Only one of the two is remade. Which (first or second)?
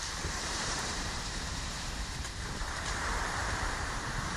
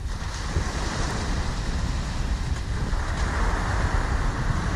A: first